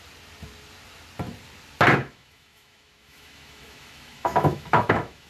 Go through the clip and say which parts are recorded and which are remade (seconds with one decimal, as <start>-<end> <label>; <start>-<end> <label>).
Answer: 0.0-2.0 recorded; 2.0-5.3 remade